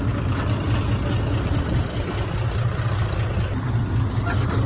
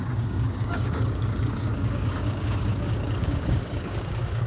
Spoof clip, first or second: second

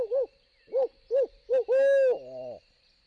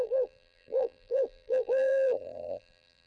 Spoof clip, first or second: second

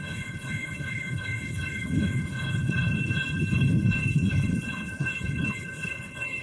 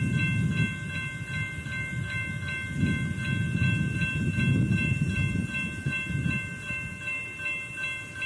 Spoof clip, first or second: first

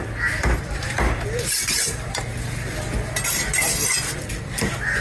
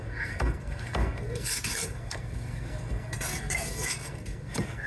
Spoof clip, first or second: second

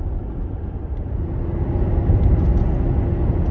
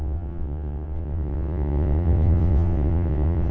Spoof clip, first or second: second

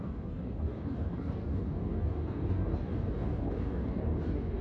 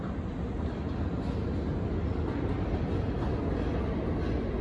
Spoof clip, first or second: first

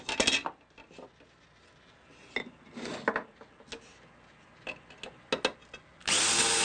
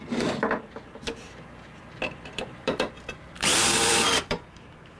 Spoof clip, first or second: second